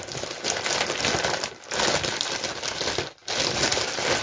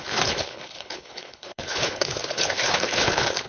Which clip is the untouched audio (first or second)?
first